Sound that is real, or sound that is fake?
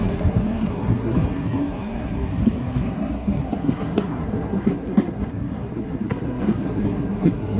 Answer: fake